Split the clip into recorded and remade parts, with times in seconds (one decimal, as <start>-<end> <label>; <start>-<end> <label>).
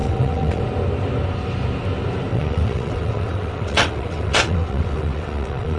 0.0-0.6 remade; 0.6-2.3 recorded; 2.3-5.8 remade